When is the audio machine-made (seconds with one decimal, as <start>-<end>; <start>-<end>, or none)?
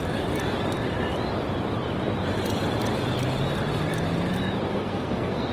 4.7-5.5